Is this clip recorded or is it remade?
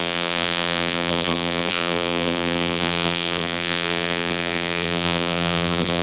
remade